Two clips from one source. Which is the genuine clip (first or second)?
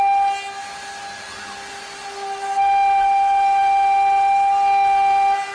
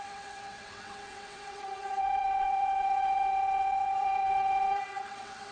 first